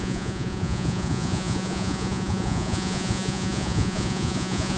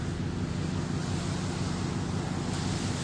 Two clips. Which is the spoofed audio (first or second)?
first